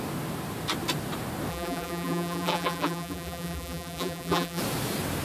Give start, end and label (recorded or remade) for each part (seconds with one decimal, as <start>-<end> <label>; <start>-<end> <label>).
0.0-1.5 recorded; 1.5-4.6 remade; 4.6-5.2 recorded